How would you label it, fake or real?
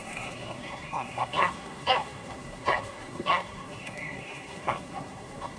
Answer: fake